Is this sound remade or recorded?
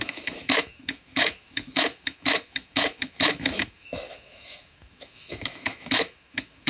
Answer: remade